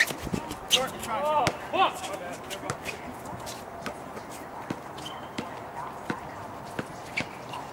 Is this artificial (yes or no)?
no